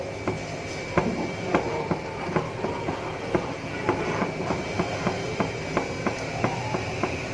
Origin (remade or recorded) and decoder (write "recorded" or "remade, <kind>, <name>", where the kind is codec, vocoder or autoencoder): recorded